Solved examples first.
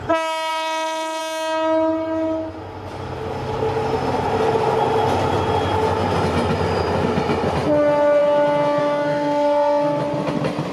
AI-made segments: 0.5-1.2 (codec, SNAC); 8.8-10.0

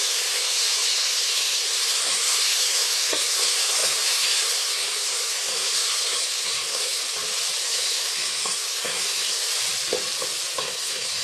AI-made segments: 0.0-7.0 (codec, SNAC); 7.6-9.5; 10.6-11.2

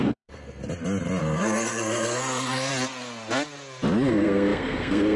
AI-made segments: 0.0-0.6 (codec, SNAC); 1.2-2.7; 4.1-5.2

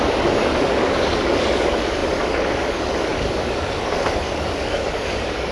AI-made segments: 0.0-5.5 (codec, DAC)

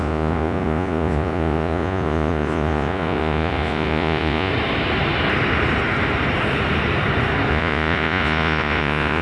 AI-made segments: 0.0-4.5 (vocoder, Vocos); 7.5-9.2

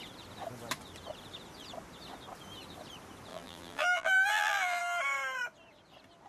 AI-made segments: 3.3-4.8 (vocoder, BigVGAN v2)